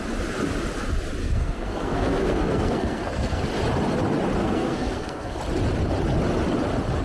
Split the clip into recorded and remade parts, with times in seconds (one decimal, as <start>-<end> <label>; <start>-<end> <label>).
0.0-1.2 recorded; 1.2-3.4 remade; 3.4-4.4 recorded; 4.4-5.4 remade; 5.4-7.0 recorded